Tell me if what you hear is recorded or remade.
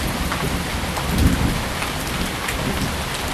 recorded